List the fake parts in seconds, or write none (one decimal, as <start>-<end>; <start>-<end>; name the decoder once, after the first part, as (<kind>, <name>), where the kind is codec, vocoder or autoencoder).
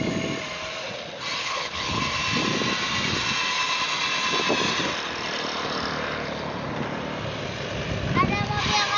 1.4-2.0 (codec, HILCodec)